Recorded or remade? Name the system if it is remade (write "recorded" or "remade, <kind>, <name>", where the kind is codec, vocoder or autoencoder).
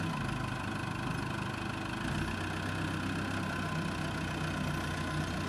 recorded